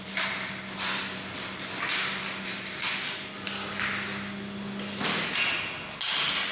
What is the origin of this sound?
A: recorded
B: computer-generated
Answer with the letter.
A